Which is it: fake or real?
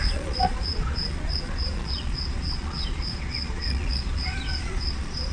fake